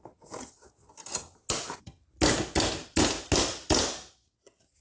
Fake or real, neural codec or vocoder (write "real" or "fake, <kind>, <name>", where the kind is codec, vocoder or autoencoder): real